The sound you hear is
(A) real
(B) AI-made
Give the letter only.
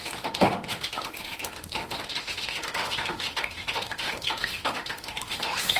B